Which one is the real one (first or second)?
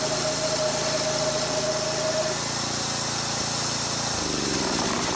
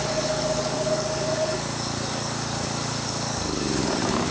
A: first